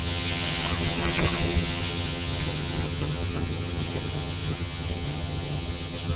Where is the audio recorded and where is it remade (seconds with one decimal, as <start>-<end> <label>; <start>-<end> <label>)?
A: 0.0-6.2 remade

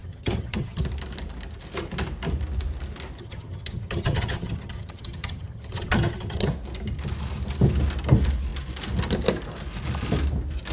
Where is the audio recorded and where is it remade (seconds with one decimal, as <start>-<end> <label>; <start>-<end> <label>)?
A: 0.0-0.8 remade; 0.8-3.2 recorded; 3.2-6.5 remade; 6.5-10.7 recorded

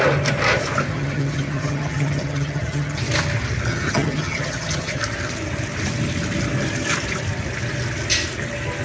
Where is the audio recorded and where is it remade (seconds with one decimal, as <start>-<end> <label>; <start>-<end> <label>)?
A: 0.0-0.9 recorded; 0.9-3.0 remade; 3.0-3.7 recorded; 3.7-5.0 remade; 5.0-8.8 recorded

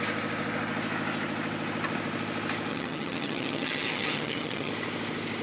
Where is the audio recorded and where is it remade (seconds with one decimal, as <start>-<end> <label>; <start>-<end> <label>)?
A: 0.0-2.7 recorded; 2.7-4.7 remade; 4.7-5.4 recorded

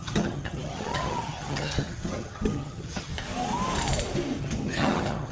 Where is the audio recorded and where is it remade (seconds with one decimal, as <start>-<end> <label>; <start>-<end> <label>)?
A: 0.0-3.1 remade; 3.1-4.4 recorded; 4.4-5.3 remade

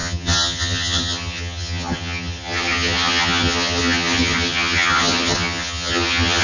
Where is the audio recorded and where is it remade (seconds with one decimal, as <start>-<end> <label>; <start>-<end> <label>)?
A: 0.0-6.4 remade

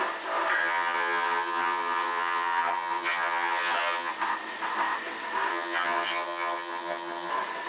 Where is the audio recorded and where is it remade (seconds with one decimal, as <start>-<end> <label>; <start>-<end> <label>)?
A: 0.0-0.6 recorded; 0.6-4.1 remade; 4.1-5.5 recorded; 5.5-7.3 remade; 7.3-7.7 recorded